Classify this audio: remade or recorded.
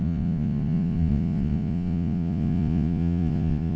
remade